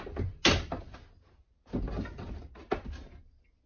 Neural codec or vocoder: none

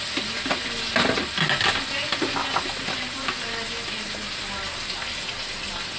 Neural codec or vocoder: none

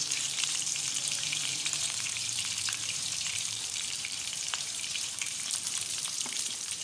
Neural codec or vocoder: vocoder, BigVGAN v2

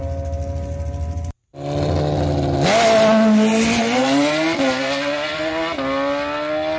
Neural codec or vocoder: none